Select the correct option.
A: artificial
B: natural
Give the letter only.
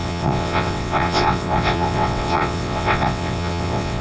A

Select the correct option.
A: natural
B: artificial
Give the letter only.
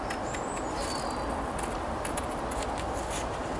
A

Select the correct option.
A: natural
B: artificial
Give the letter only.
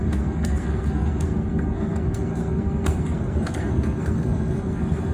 B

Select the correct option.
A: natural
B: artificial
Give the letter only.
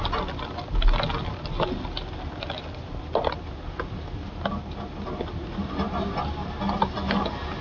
A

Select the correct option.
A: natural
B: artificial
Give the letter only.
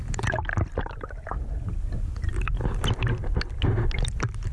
A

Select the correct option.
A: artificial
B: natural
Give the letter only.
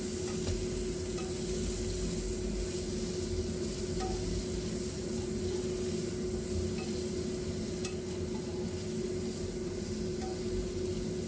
B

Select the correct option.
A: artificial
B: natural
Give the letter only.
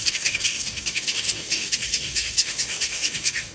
A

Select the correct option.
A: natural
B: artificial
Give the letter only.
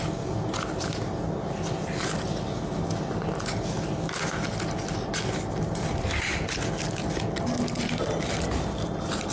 A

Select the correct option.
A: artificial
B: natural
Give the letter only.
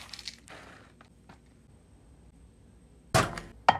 B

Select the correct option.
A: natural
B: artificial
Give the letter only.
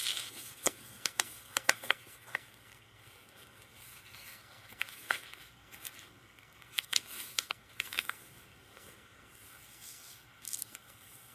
B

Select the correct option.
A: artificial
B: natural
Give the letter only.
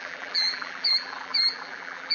A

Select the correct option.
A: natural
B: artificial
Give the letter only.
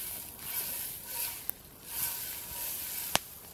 A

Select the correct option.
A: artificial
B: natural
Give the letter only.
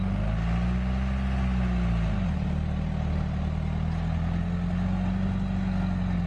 B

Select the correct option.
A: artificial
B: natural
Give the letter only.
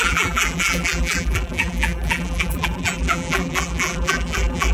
A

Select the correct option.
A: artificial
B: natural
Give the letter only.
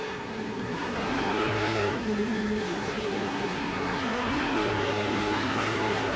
A